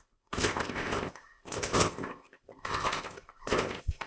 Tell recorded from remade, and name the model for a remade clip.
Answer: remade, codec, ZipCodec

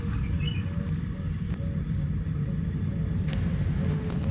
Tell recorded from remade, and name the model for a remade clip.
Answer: recorded